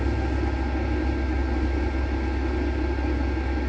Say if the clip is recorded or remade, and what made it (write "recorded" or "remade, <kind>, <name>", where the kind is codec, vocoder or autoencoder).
recorded